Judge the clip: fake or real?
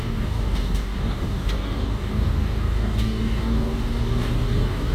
fake